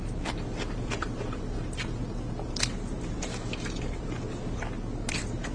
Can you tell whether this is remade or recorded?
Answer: recorded